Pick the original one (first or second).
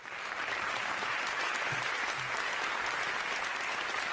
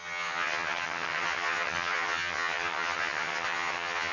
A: first